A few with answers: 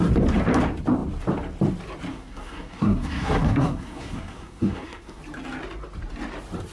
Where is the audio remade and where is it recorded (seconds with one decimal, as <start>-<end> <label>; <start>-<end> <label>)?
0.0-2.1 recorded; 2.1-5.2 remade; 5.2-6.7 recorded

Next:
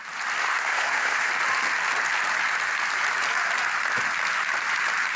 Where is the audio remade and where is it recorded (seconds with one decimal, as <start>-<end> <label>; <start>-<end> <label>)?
0.0-0.4 recorded; 0.4-1.3 remade; 1.3-5.2 recorded

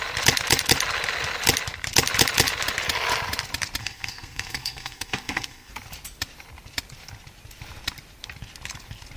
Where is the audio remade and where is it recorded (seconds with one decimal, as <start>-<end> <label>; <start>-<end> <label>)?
0.0-3.8 recorded; 3.8-5.7 remade; 5.7-9.2 recorded

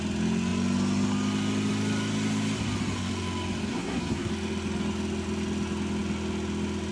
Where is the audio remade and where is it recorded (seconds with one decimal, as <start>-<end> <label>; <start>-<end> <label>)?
0.0-3.7 recorded; 3.7-4.3 remade; 4.3-6.9 recorded

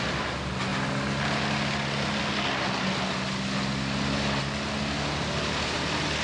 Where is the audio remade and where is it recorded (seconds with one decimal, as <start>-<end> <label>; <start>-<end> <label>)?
0.0-6.2 recorded

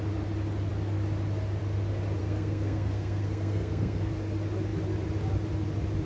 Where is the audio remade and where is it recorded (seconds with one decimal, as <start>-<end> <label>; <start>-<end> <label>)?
0.0-2.2 recorded; 2.2-4.1 remade; 4.1-6.0 recorded

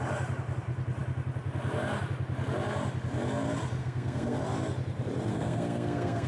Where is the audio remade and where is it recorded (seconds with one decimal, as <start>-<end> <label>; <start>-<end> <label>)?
0.0-3.8 recorded; 3.8-4.4 remade; 4.4-5.3 recorded; 5.3-6.3 remade